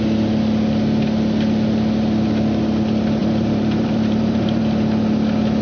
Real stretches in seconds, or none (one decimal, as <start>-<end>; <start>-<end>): 0.0-3.2; 4.6-5.6